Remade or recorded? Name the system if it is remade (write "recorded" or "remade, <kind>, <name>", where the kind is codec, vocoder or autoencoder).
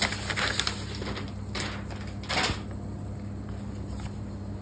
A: recorded